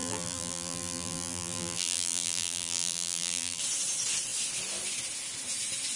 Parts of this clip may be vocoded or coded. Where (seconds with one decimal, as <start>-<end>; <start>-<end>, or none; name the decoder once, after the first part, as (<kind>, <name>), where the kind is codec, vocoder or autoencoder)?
0.0-3.6 (vocoder, BigVGAN v2)